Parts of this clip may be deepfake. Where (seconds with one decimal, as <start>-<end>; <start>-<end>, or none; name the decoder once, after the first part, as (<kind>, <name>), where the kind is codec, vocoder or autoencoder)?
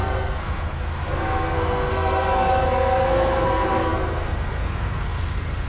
0.0-5.7 (codec, SNAC)